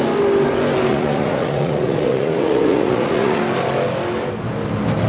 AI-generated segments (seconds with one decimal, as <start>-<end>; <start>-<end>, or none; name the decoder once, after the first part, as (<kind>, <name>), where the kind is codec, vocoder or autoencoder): 0.9-3.4 (vocoder, Vocos)